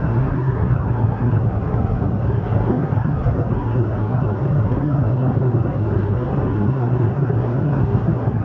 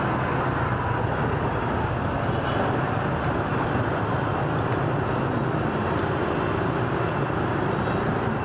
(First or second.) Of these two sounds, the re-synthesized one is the first